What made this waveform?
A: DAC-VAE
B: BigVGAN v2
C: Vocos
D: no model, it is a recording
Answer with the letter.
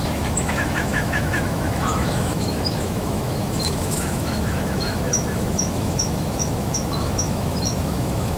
A